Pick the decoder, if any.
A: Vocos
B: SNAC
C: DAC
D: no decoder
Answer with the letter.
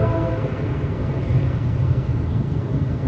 B